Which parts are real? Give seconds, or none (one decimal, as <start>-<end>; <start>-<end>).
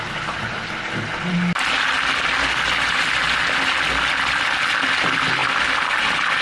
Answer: 0.0-5.4